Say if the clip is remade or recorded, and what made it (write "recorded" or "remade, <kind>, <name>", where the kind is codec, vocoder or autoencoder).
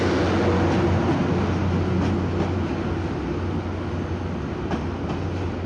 recorded